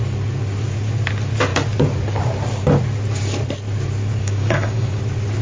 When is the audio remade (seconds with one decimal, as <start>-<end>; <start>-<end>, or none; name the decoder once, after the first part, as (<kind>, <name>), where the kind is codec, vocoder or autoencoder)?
4.2-5.0 (codec, DAC)